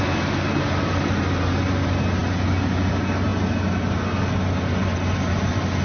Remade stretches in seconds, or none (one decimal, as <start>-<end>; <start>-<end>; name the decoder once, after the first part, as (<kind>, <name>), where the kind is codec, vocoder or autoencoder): none